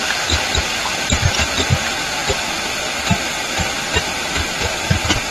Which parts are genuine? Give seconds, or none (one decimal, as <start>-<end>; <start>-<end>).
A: 0.0-5.3